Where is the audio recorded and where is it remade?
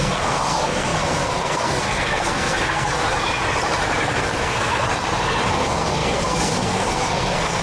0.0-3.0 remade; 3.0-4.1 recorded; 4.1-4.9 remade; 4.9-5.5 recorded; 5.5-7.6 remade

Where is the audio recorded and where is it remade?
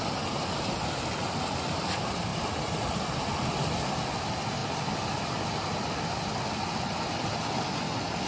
0.0-8.3 recorded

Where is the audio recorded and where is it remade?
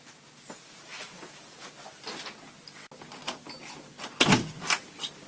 0.0-5.3 recorded